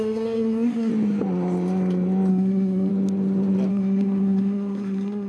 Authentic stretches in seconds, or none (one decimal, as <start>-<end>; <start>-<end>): 0.9-2.3; 2.9-3.7